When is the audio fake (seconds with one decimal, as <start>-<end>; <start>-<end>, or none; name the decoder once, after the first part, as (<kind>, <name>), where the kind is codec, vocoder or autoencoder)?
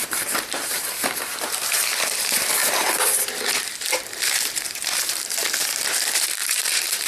0.0-7.1 (vocoder, BigVGAN v2)